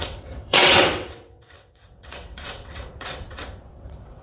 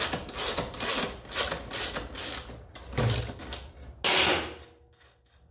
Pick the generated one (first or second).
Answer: first